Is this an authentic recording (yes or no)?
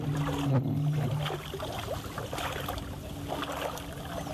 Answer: yes